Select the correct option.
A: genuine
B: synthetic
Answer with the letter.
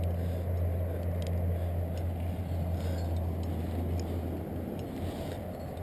A